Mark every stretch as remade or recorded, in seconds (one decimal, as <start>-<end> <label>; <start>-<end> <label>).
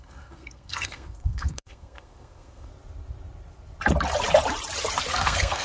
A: 0.0-2.7 remade; 2.7-5.1 recorded; 5.1-5.6 remade